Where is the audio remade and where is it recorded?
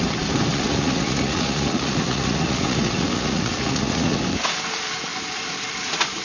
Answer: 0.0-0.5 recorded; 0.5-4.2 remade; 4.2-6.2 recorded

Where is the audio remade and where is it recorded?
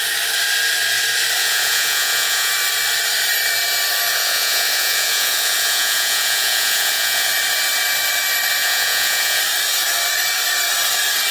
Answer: 0.0-1.4 recorded; 1.4-2.5 remade; 2.5-4.1 recorded; 4.1-7.3 remade; 7.3-8.6 recorded; 8.6-9.4 remade; 9.4-11.3 recorded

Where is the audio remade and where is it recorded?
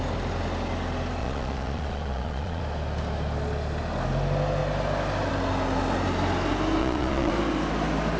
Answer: 0.0-1.2 recorded; 1.2-2.6 remade; 2.6-6.8 recorded; 6.8-7.3 remade; 7.3-8.2 recorded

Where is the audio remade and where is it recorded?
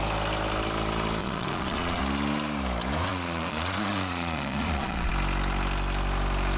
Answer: 0.0-1.2 recorded; 1.2-2.0 remade; 2.0-3.1 recorded; 3.1-5.1 remade; 5.1-6.6 recorded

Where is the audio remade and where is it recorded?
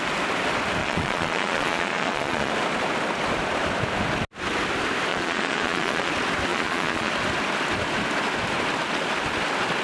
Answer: 0.0-0.8 recorded; 0.8-2.5 remade; 2.5-5.1 recorded; 5.1-6.1 remade; 6.1-6.5 recorded; 6.5-7.1 remade; 7.1-9.8 recorded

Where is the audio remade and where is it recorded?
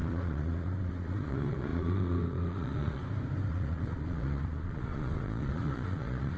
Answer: 0.0-3.0 remade; 3.0-3.5 recorded; 3.5-6.4 remade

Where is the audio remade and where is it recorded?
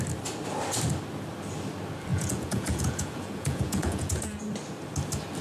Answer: 0.0-2.1 recorded; 2.1-4.4 remade; 4.4-5.4 recorded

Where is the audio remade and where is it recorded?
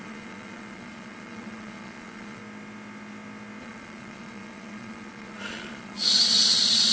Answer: 0.0-2.4 remade; 2.4-3.6 recorded; 3.6-6.9 remade